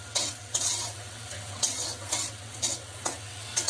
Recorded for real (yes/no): no